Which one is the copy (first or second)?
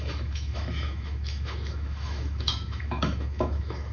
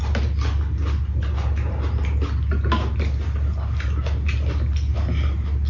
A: first